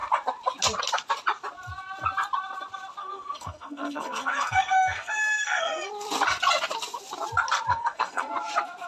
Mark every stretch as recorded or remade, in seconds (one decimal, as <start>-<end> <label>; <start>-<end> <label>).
0.0-3.0 recorded; 3.0-5.9 remade; 5.9-7.7 recorded; 7.7-8.3 remade; 8.3-8.9 recorded